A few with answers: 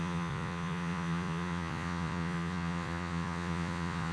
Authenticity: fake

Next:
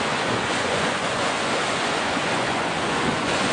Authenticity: fake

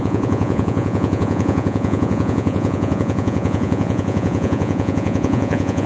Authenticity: fake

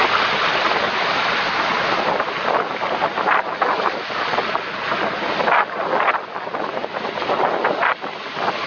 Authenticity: real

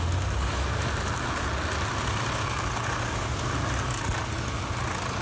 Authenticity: real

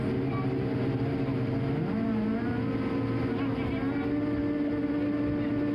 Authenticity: real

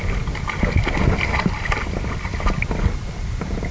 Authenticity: real